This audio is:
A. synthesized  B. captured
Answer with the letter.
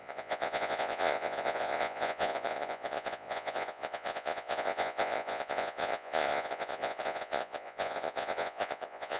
A